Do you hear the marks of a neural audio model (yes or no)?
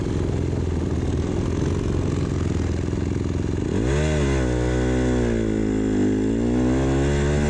no